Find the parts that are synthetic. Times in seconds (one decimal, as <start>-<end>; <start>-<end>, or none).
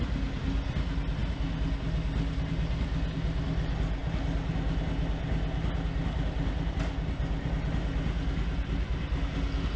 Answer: none